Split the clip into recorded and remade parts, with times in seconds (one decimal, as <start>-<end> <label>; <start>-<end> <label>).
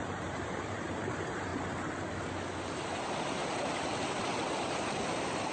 0.0-1.5 remade; 1.5-2.6 recorded; 2.6-3.4 remade; 3.4-5.5 recorded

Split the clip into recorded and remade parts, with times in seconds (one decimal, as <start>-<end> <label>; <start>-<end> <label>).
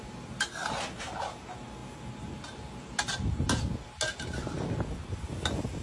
0.0-5.8 recorded